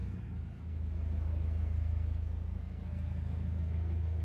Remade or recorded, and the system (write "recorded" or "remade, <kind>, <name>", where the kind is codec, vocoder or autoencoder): remade, codec, SNAC